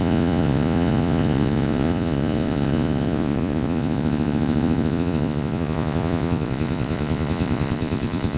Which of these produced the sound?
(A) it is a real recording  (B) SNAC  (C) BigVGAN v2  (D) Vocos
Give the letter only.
D